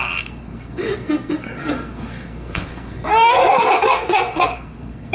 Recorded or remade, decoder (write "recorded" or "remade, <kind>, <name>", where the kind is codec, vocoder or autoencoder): remade, codec, SNAC